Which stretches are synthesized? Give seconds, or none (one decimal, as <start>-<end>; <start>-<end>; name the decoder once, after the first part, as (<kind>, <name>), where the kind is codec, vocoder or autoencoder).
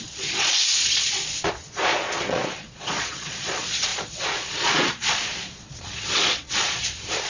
0.0-7.3 (vocoder, Vocos)